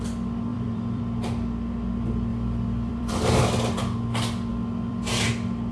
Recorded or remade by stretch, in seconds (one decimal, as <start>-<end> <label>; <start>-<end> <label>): 0.0-0.5 recorded; 0.5-1.0 remade; 1.0-2.3 recorded; 2.3-3.8 remade; 3.8-4.5 recorded; 4.5-5.3 remade; 5.3-5.7 recorded